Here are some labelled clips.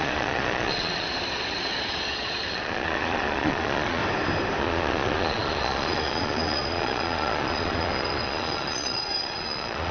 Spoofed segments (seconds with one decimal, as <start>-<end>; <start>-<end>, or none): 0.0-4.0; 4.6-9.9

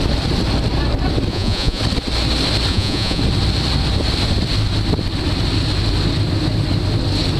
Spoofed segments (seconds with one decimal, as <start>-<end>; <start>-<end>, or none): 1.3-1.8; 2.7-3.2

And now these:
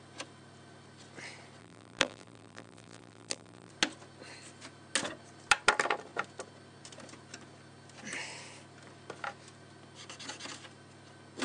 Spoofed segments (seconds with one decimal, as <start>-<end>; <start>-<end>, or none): 1.6-3.7

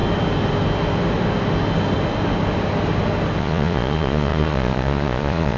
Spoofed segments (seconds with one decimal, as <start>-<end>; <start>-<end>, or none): 3.4-5.6

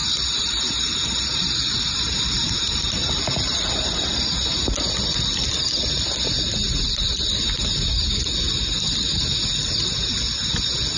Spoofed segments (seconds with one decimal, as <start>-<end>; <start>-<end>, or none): 0.0-4.0

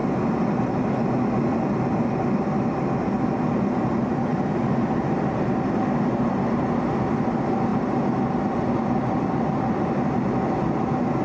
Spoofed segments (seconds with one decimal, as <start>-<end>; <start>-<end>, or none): none

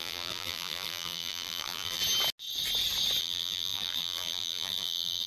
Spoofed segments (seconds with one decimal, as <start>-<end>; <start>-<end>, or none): 0.0-2.0; 3.2-5.3

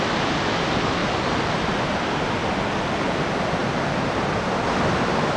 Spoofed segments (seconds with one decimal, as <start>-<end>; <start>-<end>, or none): 1.0-1.6; 3.6-4.5